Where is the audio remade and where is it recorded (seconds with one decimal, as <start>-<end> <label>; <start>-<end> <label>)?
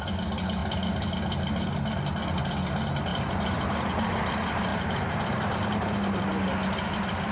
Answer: 0.0-3.1 recorded; 3.1-4.1 remade; 4.1-4.7 recorded; 4.7-6.2 remade; 6.2-7.3 recorded